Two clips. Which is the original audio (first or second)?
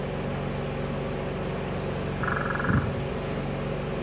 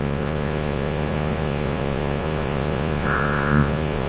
first